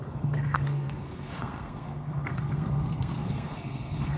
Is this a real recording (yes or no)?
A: no